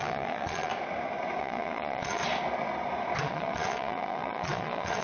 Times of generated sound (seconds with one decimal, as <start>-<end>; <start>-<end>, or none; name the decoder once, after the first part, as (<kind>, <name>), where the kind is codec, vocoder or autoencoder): 0.0-0.7 (vocoder, Vocos); 1.4-2.2; 3.2-5.0